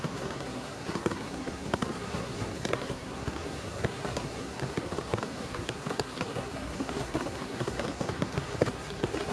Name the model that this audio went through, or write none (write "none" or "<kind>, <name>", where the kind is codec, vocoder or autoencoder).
codec, SNAC